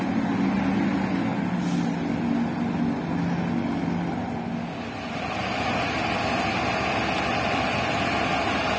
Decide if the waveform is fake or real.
real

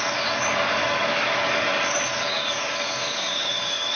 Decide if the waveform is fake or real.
fake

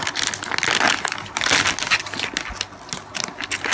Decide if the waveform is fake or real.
real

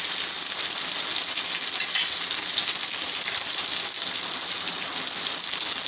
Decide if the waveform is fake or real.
real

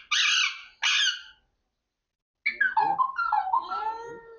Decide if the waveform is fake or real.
real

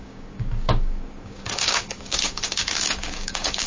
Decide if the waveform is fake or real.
fake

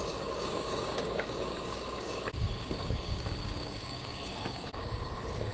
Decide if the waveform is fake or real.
fake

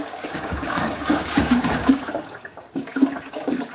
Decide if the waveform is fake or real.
fake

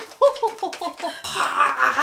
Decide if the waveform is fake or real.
fake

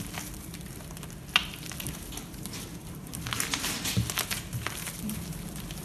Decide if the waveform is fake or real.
real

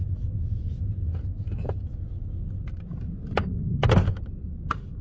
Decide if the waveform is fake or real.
real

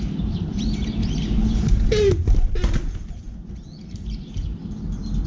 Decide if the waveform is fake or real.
real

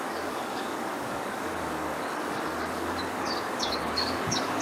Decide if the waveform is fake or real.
fake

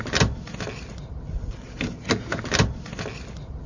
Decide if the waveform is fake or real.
real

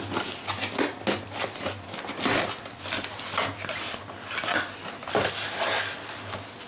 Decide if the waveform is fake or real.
real